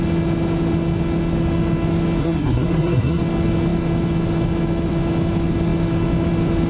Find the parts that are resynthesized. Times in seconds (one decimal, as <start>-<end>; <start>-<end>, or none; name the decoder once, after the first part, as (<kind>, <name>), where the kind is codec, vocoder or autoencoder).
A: 2.2-3.2 (codec, SNAC)